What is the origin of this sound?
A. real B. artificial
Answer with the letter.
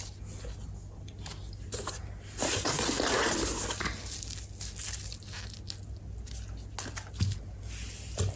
A